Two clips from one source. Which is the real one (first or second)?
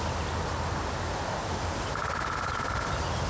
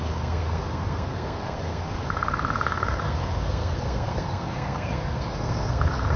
first